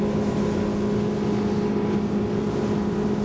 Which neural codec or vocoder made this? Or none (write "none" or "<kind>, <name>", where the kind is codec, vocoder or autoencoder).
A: none